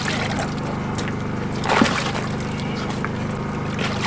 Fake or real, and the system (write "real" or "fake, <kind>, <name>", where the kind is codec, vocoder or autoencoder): real